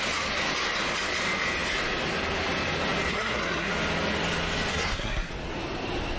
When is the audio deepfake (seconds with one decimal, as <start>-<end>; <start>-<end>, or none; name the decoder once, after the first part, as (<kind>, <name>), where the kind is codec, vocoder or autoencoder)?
3.1-3.7 (codec, SNAC); 4.7-5.3